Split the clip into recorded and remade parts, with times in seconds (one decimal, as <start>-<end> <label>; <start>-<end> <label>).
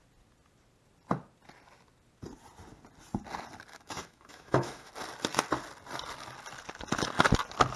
0.0-3.7 recorded; 3.7-4.9 remade; 4.9-7.8 recorded